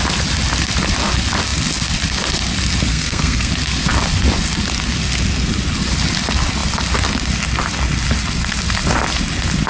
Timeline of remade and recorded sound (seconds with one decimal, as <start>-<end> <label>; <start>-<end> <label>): 0.0-2.9 recorded; 2.9-3.5 remade; 3.5-9.7 recorded